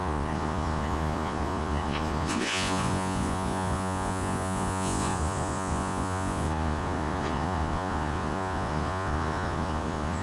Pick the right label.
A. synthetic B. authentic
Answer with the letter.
A